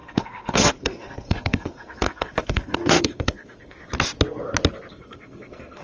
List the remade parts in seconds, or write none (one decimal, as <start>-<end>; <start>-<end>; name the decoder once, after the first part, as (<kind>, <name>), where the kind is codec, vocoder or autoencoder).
0.0-3.8 (codec, SNAC); 4.9-5.8